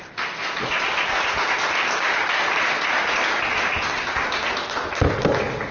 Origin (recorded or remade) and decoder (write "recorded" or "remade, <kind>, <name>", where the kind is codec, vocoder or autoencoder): recorded